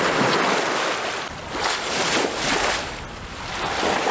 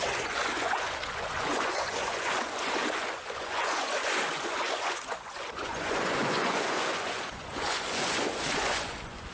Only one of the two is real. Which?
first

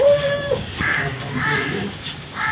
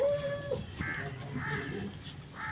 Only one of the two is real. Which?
second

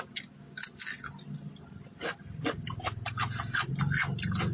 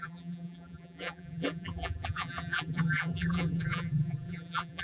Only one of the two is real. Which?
first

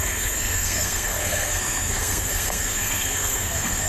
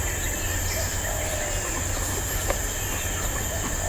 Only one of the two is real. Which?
second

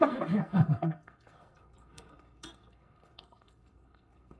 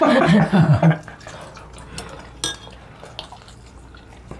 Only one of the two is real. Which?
second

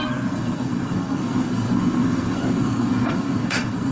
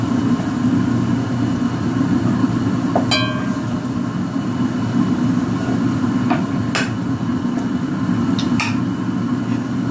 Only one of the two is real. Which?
second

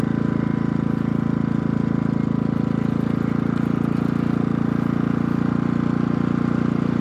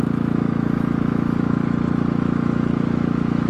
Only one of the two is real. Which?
first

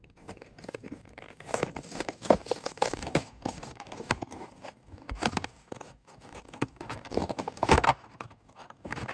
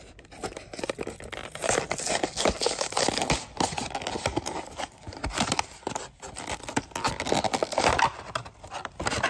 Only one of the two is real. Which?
second